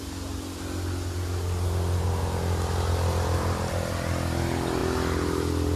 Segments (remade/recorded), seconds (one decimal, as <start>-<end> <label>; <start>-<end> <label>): 0.0-5.8 recorded